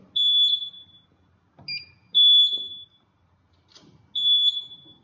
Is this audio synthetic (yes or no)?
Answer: no